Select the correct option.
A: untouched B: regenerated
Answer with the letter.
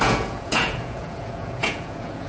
B